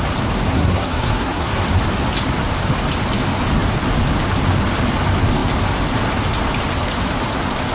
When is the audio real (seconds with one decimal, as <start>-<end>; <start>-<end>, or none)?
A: 0.0-0.5; 1.7-7.7